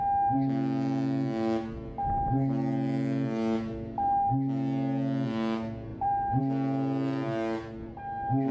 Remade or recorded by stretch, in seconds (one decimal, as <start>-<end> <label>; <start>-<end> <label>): 0.0-5.9 recorded; 5.9-6.4 remade; 6.4-8.5 recorded